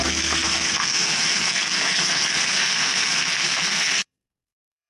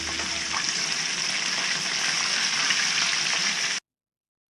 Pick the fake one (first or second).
first